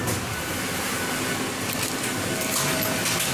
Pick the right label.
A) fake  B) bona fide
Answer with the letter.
B